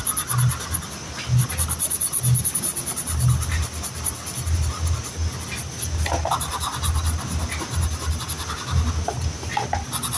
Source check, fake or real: real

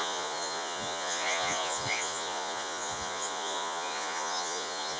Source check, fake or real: fake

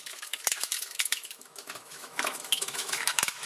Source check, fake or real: fake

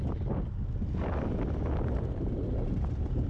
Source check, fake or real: real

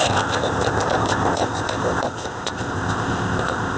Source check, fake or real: fake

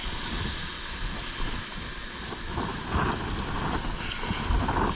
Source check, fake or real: real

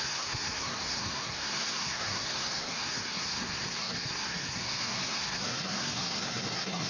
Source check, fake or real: fake